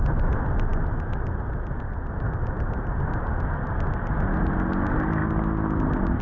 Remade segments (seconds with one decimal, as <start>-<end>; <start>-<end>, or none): none